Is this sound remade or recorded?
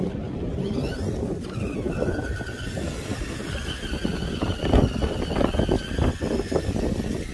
recorded